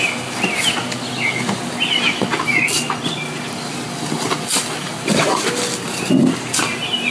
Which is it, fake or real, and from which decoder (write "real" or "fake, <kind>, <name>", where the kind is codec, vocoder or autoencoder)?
real